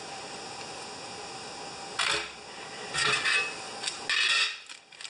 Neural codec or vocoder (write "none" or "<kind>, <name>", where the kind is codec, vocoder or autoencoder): none